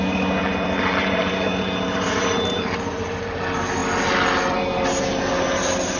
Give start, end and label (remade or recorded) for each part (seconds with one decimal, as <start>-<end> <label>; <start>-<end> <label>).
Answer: 0.0-0.4 recorded; 0.4-3.4 remade; 3.4-6.0 recorded